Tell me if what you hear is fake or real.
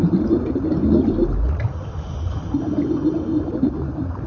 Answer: real